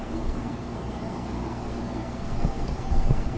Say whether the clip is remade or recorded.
remade